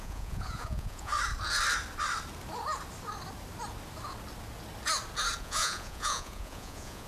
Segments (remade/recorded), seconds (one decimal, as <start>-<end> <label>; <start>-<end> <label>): 0.0-1.1 remade; 1.1-5.4 recorded; 5.4-7.1 remade